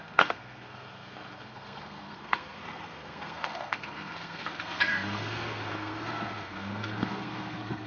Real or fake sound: fake